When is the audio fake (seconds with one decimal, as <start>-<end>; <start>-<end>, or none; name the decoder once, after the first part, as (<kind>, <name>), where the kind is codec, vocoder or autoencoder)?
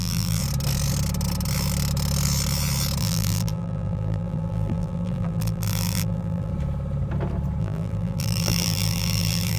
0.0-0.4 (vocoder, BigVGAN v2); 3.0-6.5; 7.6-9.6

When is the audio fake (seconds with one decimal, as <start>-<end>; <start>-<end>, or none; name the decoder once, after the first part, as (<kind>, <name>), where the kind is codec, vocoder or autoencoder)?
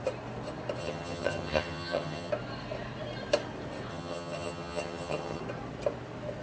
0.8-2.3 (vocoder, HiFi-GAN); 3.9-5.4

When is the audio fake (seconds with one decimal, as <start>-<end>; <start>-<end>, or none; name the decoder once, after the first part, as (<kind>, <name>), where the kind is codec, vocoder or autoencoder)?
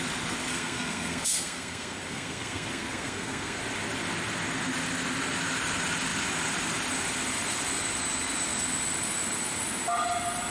0.5-3.6 (codec, SNAC)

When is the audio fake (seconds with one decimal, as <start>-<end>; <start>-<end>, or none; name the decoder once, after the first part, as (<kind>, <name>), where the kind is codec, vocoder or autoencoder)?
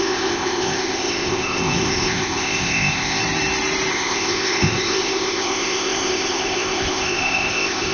0.0-3.2 (codec, ZipCodec); 3.9-7.9